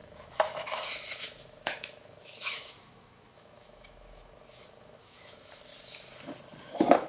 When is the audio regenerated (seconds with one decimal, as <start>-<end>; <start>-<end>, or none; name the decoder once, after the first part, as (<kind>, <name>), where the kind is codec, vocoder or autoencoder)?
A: 0.0-5.7 (autoencoder, DAC-VAE); 6.6-7.1